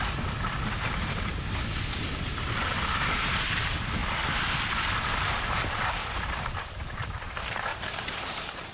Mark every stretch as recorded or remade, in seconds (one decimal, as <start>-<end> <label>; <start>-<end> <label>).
0.0-4.0 remade; 4.0-5.1 recorded; 5.1-8.7 remade